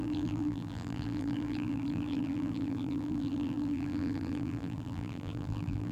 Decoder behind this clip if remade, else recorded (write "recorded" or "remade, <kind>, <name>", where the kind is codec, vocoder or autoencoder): remade, vocoder, BigVGAN v2